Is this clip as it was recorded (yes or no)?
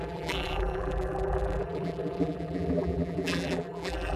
no